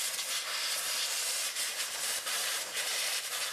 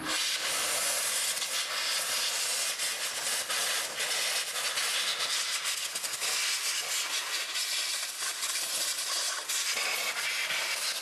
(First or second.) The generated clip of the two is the first